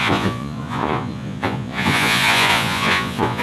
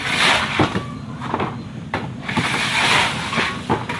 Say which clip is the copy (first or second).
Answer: first